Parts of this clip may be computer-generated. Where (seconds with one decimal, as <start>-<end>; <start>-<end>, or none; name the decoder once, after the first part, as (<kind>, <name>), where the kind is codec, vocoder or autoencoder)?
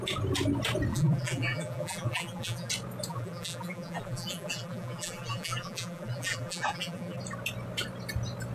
0.9-2.7 (vocoder, BigVGAN v2); 3.1-7.2